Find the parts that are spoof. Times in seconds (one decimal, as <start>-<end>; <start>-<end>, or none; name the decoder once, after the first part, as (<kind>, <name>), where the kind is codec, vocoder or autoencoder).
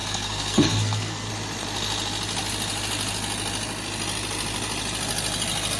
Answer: 0.0-1.3 (codec, SNAC)